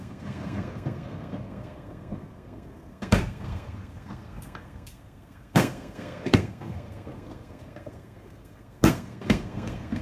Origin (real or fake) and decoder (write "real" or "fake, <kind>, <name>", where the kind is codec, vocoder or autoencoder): fake, codec, SNAC